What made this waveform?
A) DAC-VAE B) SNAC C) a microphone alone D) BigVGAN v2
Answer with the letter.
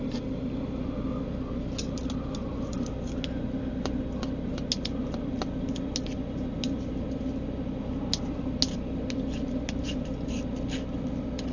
C